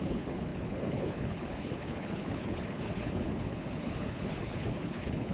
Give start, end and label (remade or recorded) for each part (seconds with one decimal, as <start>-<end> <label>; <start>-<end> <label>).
0.0-5.3 remade